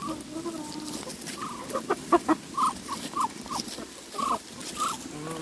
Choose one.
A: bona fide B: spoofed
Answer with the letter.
A